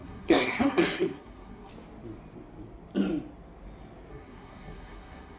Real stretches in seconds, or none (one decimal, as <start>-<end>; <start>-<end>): 1.7-4.1